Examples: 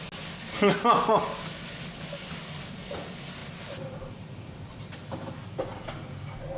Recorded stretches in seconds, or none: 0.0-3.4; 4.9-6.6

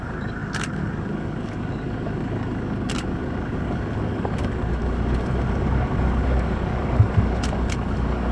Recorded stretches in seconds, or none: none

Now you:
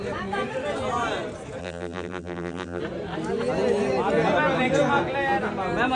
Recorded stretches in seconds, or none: 0.0-1.6; 2.8-6.0

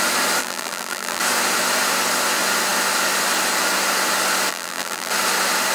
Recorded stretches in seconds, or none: 0.0-0.4; 1.2-4.5; 5.1-5.7

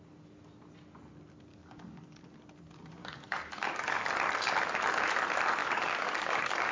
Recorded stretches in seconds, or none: 0.0-1.5; 2.2-3.0; 4.1-5.6

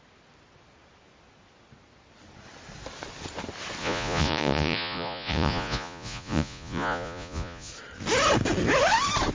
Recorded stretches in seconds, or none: 0.0-3.8; 7.7-9.3